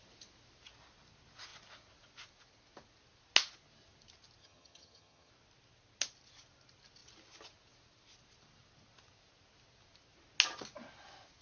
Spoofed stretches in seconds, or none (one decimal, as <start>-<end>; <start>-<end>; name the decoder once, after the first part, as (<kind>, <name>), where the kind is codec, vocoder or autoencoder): 4.4-5.3 (vocoder, HiFi-GAN)